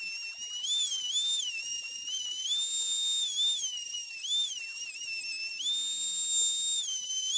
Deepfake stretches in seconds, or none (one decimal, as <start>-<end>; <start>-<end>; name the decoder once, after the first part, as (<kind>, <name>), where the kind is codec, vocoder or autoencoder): none